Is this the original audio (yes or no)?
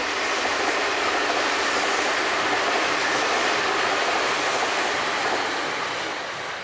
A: yes